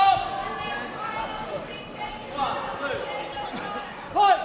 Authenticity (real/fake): real